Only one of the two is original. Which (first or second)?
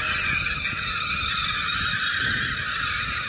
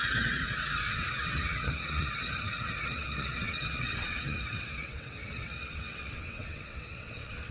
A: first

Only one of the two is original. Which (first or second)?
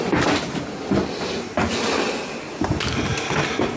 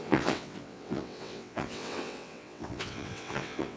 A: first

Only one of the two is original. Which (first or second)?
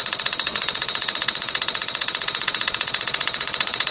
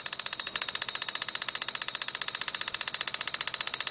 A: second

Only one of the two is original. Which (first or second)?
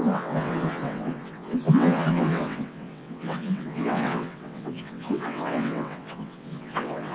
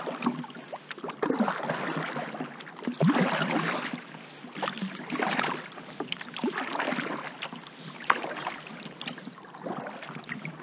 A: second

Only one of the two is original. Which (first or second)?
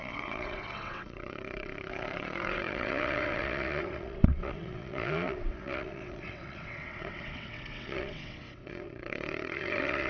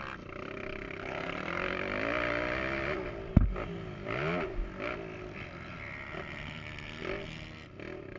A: second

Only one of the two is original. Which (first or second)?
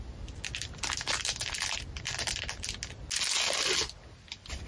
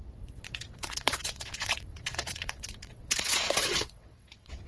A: first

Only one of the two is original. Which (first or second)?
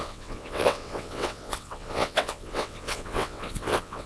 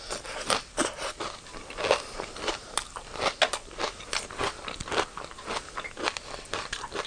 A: second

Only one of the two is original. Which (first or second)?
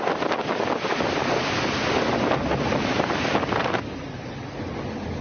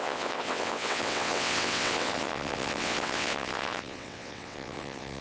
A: first